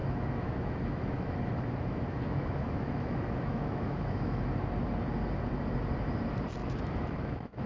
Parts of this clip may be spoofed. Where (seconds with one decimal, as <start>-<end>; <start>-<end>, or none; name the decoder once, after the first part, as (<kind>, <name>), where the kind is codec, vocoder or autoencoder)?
0.0-4.4 (autoencoder, DAC-VAE); 6.6-7.7